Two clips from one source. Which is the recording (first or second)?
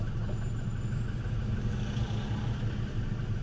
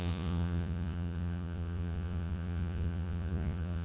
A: first